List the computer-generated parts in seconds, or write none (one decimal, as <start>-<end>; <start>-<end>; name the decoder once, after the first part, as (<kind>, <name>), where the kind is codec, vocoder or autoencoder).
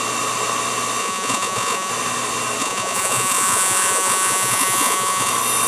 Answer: 1.0-1.9 (vocoder, Vocos); 2.6-5.3